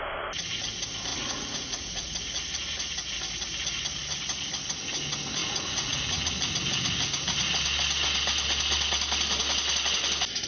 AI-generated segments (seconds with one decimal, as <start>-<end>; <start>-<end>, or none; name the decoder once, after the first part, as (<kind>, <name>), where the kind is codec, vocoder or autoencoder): 1.1-2.2 (vocoder, Vocos); 5.4-6.3